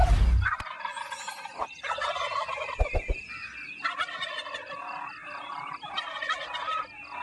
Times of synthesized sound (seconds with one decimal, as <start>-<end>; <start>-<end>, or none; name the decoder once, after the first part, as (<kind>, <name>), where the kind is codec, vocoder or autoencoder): none